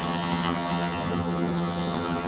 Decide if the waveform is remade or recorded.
remade